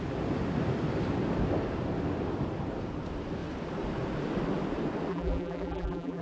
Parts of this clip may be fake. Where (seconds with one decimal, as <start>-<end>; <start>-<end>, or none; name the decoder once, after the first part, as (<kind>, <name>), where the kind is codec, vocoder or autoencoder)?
5.1-6.2 (vocoder, BigVGAN v2)